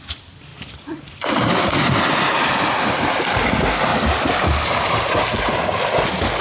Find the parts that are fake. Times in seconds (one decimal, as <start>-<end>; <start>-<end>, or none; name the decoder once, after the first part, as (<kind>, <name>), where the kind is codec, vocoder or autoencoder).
0.5-1.8 (vocoder, BigVGAN v2); 3.9-5.5